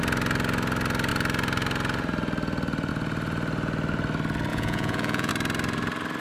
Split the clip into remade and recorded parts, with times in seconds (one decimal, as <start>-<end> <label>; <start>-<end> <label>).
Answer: 0.0-4.5 recorded; 4.5-5.3 remade; 5.3-6.2 recorded